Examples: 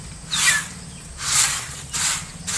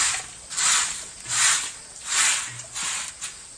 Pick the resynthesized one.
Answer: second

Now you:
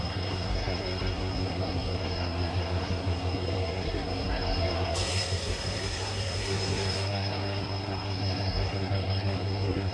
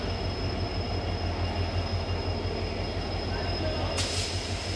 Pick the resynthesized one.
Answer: first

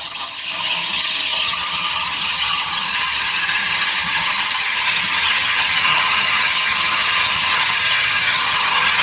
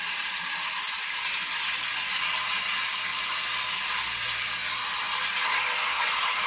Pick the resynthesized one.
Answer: first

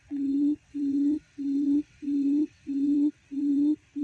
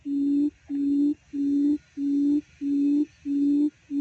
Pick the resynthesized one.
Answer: first